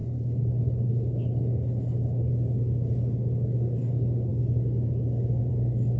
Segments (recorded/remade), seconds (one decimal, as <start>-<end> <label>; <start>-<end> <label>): 0.0-2.3 remade; 2.3-6.0 recorded